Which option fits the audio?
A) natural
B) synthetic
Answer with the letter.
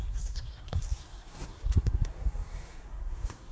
B